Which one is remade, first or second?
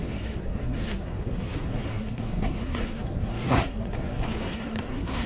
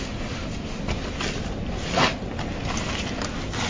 first